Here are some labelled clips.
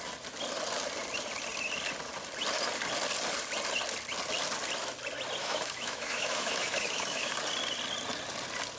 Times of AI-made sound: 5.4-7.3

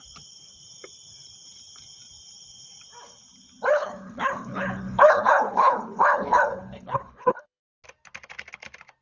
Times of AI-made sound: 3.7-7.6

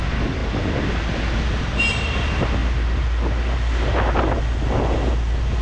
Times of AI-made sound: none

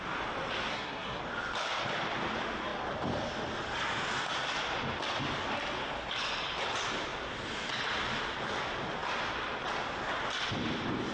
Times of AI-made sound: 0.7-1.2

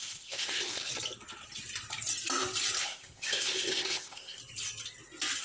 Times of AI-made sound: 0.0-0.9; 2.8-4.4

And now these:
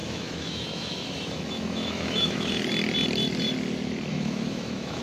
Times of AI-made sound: 0.0-2.5; 4.1-5.0

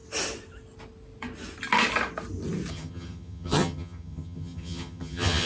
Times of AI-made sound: 2.7-5.5